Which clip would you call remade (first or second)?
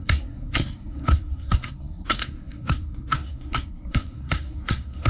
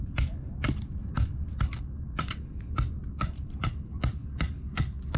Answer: first